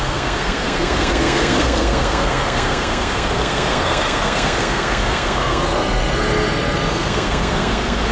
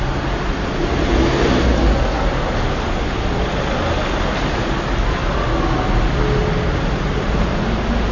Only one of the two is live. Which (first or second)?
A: second